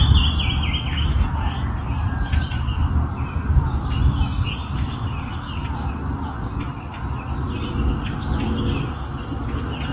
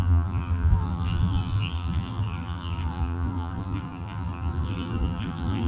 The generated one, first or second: second